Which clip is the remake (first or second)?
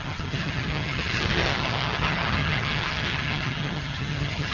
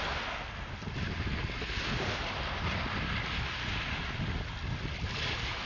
first